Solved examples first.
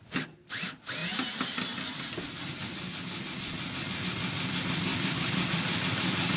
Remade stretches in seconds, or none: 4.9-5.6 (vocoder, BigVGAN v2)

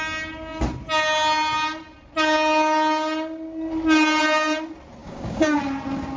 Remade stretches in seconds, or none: 5.0-5.6 (codec, DAC)

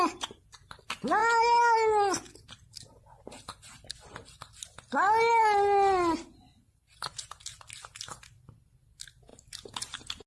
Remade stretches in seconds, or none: none

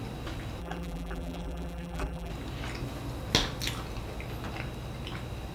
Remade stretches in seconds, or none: 0.6-2.3 (vocoder, BigVGAN v2)

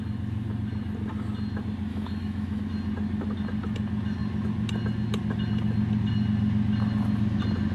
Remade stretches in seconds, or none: 1.9-2.6 (autoencoder, DAC-VAE)

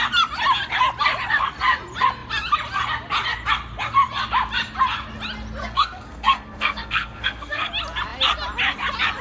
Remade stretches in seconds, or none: 5.6-7.7 (codec, SNAC)